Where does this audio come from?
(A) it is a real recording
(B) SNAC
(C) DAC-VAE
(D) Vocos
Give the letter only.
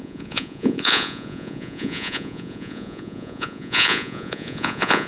D